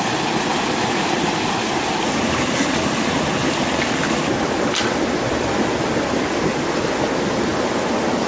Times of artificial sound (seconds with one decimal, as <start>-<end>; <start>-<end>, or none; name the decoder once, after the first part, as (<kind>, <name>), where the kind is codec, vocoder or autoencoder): none